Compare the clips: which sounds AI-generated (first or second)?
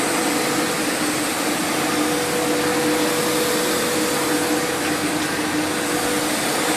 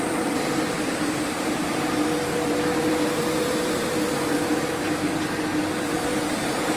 second